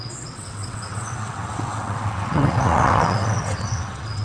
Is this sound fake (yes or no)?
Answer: yes